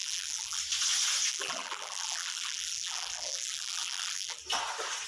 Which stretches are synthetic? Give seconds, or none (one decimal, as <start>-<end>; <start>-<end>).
0.0-0.6; 1.3-4.4